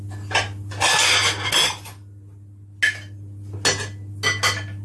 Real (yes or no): yes